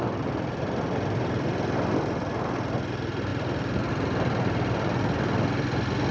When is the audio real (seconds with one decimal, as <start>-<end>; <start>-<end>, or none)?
0.0-6.1